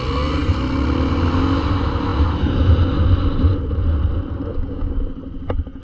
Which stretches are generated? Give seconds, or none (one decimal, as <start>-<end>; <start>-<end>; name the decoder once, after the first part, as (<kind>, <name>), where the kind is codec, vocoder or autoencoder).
4.5-5.0 (codec, DAC)